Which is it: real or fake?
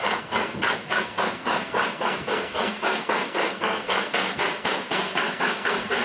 fake